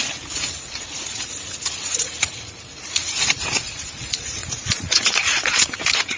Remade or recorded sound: remade